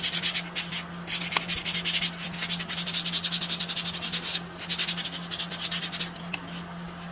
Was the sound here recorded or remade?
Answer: recorded